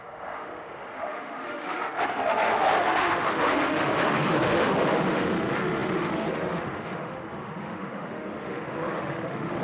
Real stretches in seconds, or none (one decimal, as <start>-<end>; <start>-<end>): none